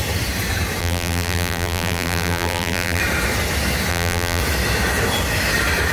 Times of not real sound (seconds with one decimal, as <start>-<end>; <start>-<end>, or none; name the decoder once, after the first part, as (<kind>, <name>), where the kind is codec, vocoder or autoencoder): 0.8-3.0 (vocoder, BigVGAN v2); 3.9-4.4